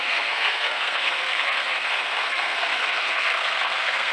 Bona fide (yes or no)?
no